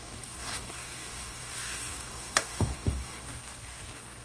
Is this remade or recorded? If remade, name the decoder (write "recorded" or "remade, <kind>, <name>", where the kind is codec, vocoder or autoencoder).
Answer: remade, codec, DAC